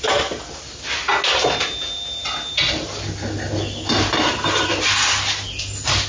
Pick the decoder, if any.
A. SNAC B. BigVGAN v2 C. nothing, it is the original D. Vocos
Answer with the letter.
C